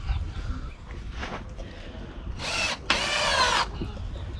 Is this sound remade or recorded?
recorded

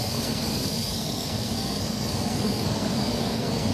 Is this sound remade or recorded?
remade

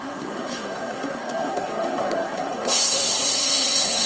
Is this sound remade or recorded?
remade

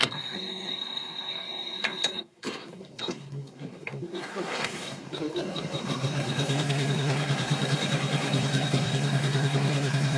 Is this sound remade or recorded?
remade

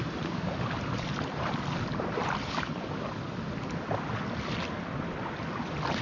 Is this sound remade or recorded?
recorded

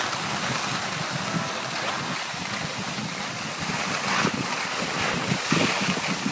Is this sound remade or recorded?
recorded